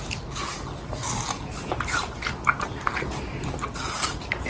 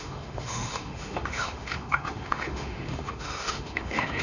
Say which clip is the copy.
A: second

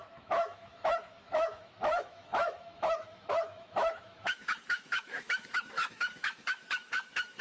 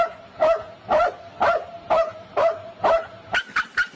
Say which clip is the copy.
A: first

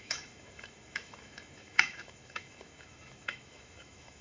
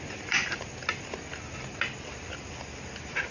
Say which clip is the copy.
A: first